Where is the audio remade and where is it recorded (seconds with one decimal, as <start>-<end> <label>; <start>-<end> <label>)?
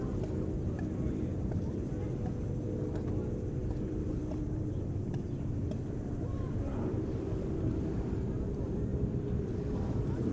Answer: 0.0-1.3 recorded; 1.3-1.8 remade; 1.8-3.6 recorded; 3.6-7.6 remade; 7.6-8.9 recorded; 8.9-10.3 remade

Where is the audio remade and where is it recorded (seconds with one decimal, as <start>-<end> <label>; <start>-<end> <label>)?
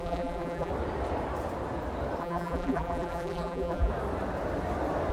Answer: 0.0-0.7 remade; 0.7-2.2 recorded; 2.2-3.9 remade; 3.9-5.1 recorded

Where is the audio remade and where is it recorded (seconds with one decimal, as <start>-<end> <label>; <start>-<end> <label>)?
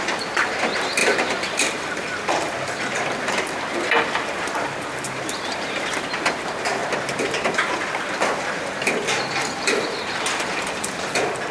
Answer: 0.0-6.8 remade; 6.8-7.4 recorded; 7.4-11.5 remade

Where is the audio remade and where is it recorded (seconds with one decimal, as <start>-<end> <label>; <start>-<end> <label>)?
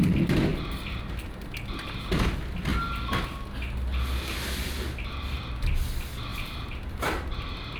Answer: 0.0-0.5 recorded; 0.5-1.0 remade; 1.0-6.3 recorded; 6.3-7.8 remade